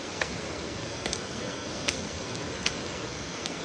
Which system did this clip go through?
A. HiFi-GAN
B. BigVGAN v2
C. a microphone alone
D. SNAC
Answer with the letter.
D